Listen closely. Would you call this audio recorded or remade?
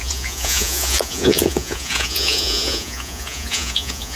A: remade